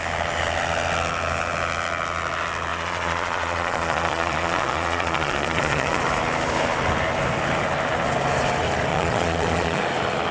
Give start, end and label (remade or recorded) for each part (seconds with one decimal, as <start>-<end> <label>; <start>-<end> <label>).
0.0-2.7 recorded; 2.7-6.0 remade; 6.0-8.9 recorded; 8.9-9.8 remade; 9.8-10.3 recorded